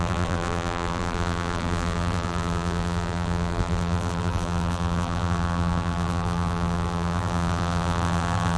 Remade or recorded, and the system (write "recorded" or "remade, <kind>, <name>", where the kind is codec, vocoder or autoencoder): remade, vocoder, BigVGAN v2